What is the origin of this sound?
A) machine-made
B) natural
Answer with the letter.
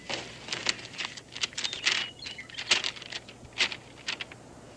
B